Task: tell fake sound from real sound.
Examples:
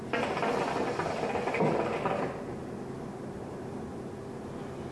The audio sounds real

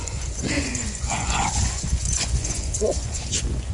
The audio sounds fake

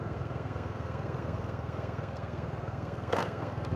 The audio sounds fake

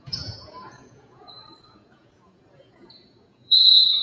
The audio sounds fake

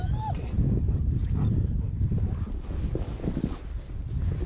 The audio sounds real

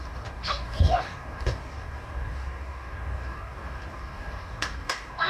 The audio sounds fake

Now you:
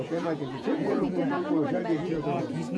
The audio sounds fake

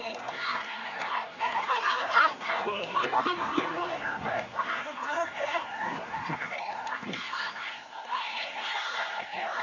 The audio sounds fake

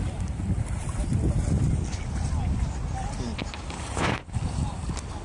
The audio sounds real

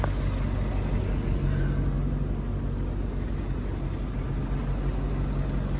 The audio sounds real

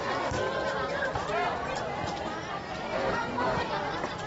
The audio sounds fake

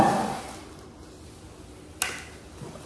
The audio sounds real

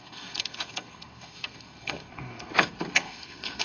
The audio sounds fake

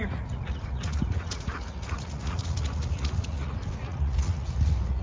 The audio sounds fake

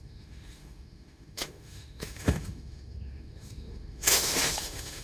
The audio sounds fake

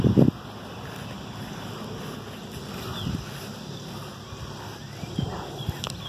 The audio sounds real